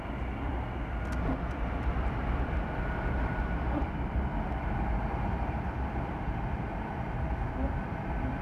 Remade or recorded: remade